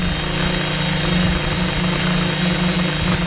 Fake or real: real